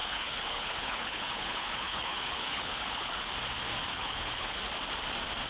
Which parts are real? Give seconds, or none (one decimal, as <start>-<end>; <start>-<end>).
3.3-3.9; 4.6-5.5